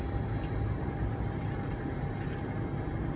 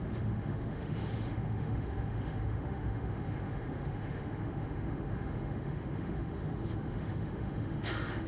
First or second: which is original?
first